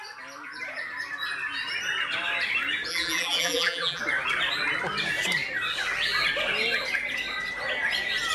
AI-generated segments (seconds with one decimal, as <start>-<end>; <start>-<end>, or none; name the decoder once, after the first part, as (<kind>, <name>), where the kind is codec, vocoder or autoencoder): 2.9-4.0 (vocoder, BigVGAN v2)